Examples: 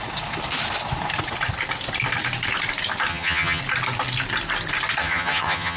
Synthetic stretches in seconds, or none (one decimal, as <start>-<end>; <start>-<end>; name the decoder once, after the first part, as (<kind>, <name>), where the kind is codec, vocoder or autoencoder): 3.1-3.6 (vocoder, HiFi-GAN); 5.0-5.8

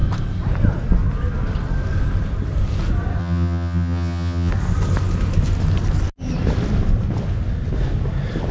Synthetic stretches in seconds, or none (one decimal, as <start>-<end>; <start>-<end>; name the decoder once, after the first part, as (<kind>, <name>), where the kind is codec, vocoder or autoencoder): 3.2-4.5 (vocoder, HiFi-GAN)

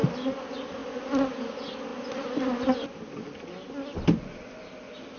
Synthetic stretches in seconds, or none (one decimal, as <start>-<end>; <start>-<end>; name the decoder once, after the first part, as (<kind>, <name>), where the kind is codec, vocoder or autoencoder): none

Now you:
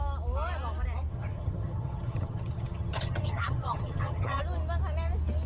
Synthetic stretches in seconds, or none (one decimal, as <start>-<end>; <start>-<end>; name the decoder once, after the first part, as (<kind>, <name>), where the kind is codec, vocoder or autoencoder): 1.1-4.4 (vocoder, HiFi-GAN)